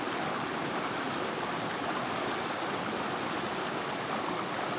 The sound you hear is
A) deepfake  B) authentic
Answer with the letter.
B